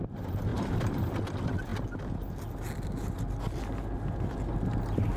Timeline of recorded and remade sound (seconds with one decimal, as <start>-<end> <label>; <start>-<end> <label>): 0.0-0.5 recorded; 0.5-1.2 remade; 1.2-5.2 recorded